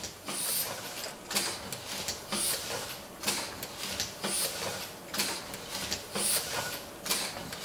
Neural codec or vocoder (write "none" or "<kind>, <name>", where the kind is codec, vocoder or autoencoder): none